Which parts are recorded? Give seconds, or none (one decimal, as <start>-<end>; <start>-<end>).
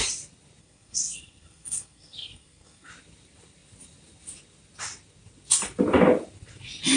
0.0-0.6; 2.9-7.0